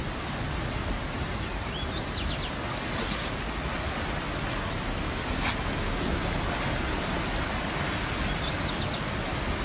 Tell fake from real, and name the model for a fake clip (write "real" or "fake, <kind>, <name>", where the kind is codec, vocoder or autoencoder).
real